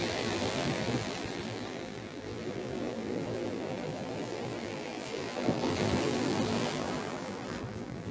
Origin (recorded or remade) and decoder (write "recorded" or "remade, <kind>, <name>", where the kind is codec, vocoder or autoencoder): remade, vocoder, BigVGAN v2